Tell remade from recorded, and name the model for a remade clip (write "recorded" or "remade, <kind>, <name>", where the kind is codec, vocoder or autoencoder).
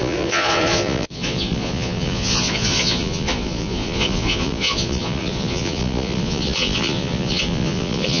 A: remade, vocoder, Vocos